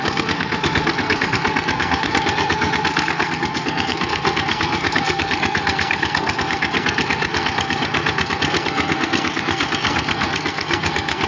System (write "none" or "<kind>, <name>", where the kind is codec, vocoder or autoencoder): codec, SNAC